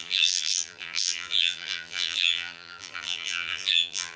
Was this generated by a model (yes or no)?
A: yes